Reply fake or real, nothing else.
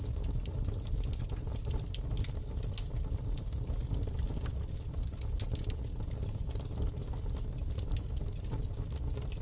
real